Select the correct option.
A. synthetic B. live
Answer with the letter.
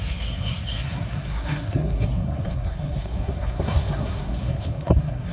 A